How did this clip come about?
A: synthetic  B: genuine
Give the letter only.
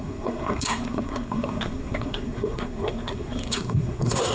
A